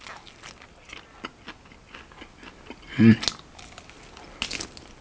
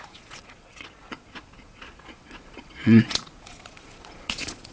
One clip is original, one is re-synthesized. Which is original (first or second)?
first